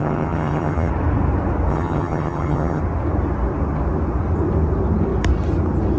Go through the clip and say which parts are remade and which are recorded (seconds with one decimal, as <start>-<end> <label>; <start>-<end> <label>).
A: 0.0-0.9 remade; 0.9-1.7 recorded; 1.7-2.8 remade; 2.8-6.0 recorded